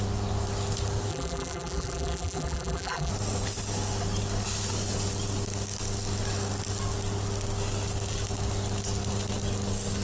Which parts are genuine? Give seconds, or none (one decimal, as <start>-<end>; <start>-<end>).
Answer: 0.0-1.1; 3.1-10.0